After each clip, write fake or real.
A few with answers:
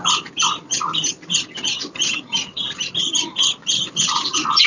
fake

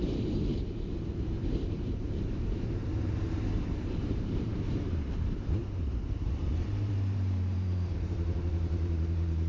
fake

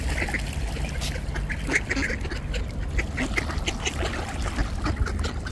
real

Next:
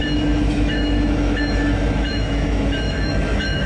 fake